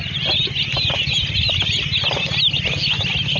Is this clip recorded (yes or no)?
yes